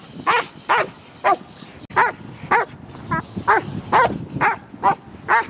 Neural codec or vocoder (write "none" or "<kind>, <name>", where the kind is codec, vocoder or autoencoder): none